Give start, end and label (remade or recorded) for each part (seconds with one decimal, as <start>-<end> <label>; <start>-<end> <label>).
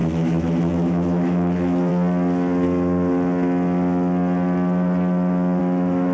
0.0-1.9 remade; 1.9-5.6 recorded; 5.6-6.1 remade